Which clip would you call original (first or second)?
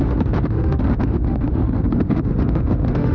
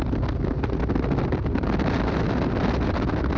second